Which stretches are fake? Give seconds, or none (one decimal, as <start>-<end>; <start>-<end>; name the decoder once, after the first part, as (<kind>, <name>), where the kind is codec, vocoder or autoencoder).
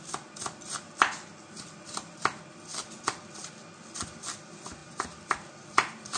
none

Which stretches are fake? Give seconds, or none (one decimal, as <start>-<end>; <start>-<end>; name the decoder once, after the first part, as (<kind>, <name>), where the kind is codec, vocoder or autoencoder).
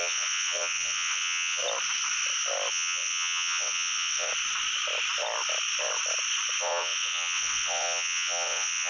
0.0-1.6 (vocoder, WaveNeXt); 2.7-4.3; 6.6-8.9